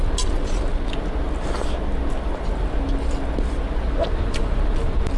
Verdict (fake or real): real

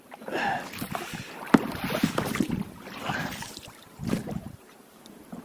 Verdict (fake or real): real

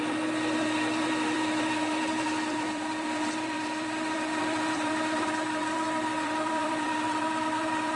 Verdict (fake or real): fake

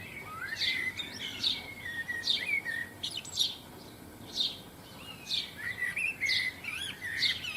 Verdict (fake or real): fake